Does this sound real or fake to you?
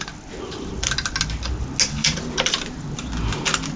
real